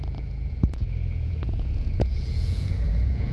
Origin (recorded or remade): remade